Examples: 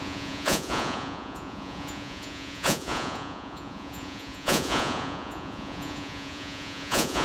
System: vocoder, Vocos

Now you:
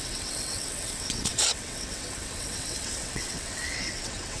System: vocoder, WaveNeXt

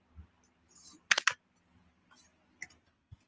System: none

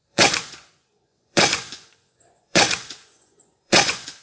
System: vocoder, Vocos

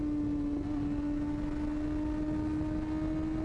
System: none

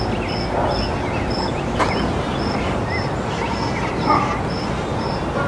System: none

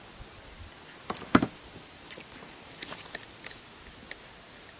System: none